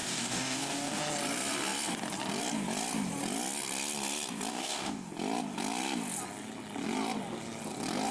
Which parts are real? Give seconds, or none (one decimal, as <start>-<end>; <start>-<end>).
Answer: 1.0-4.5; 5.1-8.1